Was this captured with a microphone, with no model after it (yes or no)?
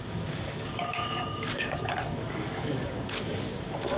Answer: no